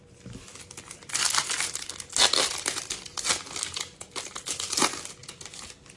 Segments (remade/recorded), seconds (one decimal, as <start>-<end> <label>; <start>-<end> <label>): 0.0-6.0 recorded